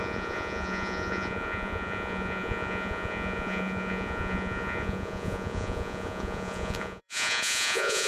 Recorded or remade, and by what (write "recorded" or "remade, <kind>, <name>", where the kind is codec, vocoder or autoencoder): remade, vocoder, Vocos